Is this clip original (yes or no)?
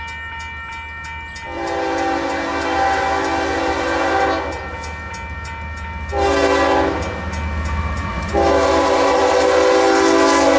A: yes